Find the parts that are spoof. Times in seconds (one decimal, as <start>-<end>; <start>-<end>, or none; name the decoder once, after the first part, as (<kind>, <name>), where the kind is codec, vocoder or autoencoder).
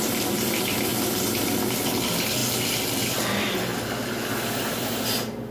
none